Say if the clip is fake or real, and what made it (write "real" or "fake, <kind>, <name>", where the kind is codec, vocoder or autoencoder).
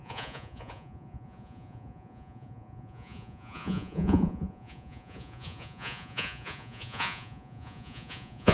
fake, vocoder, Vocos